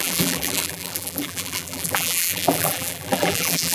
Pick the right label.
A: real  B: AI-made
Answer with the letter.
B